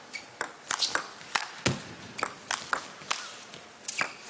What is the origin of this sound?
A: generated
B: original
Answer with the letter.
B